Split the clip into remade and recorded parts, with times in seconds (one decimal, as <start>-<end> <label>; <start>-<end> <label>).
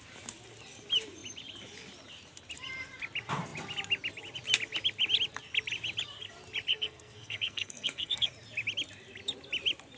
0.0-6.7 recorded; 6.7-8.3 remade; 8.3-10.0 recorded